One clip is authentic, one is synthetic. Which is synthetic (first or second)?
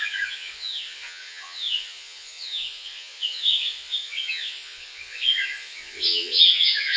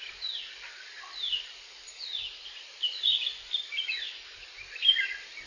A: first